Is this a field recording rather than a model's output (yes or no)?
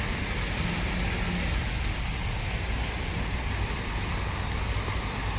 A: yes